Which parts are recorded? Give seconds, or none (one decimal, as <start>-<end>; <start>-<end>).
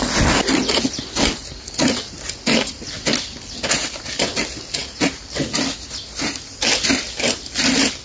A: 0.0-8.0